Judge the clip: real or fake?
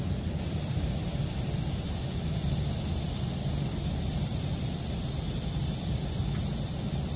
real